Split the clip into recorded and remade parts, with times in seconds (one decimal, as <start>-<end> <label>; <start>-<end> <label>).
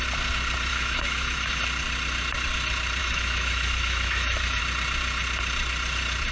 0.0-0.7 recorded; 0.7-1.6 remade; 1.6-3.0 recorded; 3.0-4.6 remade; 4.6-6.3 recorded